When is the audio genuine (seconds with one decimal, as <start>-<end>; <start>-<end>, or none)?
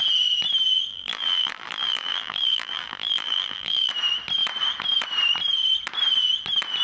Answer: 0.0-0.9; 3.9-6.8